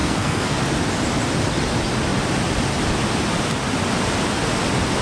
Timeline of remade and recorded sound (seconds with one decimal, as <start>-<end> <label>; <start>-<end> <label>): 0.0-0.6 remade; 0.6-5.0 recorded